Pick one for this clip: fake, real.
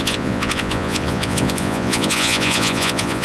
fake